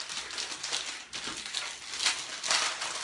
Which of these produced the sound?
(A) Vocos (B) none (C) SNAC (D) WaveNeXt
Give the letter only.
B